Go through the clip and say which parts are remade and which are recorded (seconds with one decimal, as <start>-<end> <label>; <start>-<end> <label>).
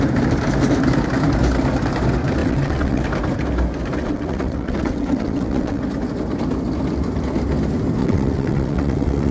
0.0-2.4 recorded; 2.4-3.0 remade; 3.0-4.0 recorded; 4.0-5.8 remade; 5.8-8.0 recorded; 8.0-9.3 remade